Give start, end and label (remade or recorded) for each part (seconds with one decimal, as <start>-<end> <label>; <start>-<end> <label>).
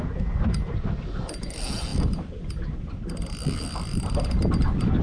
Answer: 0.0-5.0 recorded